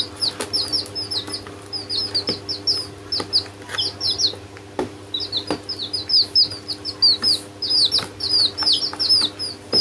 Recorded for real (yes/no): yes